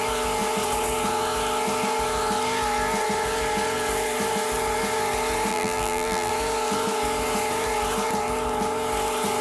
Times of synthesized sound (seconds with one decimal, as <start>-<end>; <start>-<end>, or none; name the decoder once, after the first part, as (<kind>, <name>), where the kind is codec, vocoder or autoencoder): 5.5-6.3 (vocoder, BigVGAN v2)